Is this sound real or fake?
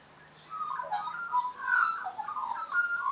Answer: real